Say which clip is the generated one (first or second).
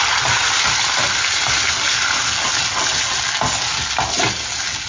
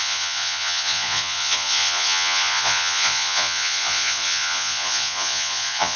second